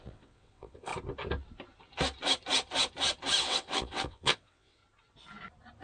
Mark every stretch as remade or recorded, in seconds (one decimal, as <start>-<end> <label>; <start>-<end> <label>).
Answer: 0.0-0.9 remade; 0.9-3.4 recorded; 3.4-4.8 remade; 4.8-5.8 recorded